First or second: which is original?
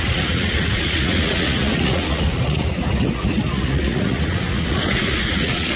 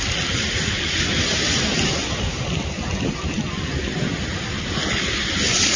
second